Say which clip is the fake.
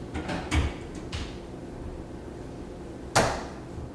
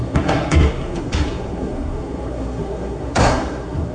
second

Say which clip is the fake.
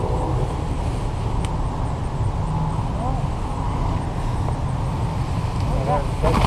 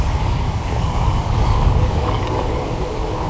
second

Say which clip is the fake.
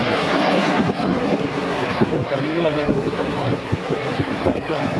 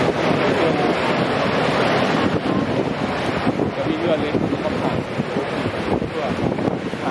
first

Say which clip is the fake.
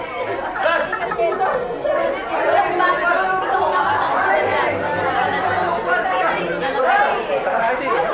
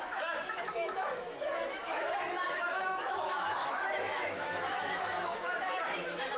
second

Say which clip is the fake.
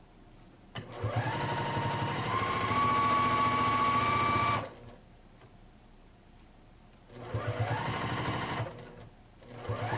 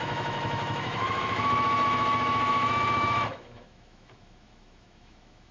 second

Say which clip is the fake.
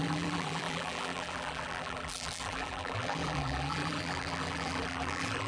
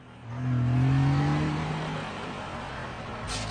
first